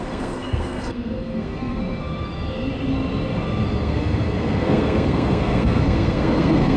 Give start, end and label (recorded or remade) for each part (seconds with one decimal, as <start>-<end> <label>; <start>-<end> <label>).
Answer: 0.0-1.8 remade; 1.8-3.8 recorded; 3.8-6.8 remade